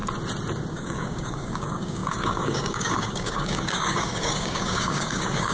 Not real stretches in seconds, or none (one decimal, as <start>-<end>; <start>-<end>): 0.7-5.5